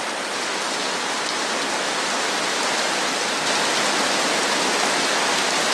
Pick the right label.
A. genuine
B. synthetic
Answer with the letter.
A